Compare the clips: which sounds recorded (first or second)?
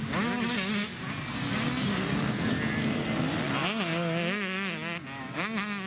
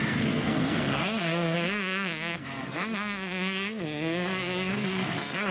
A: first